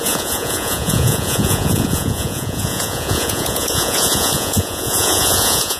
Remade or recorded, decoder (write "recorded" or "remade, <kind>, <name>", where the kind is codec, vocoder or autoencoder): remade, vocoder, Vocos